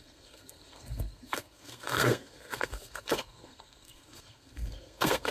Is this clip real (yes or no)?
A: no